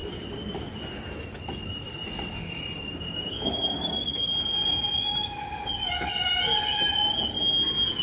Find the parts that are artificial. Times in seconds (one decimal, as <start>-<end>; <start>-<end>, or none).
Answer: 2.8-4.3